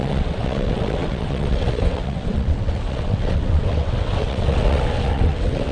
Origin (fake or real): fake